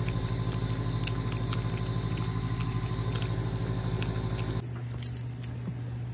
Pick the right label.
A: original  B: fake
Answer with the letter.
A